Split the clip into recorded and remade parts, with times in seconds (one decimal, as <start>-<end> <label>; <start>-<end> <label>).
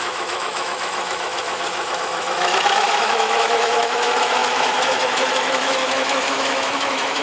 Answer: 0.0-7.2 remade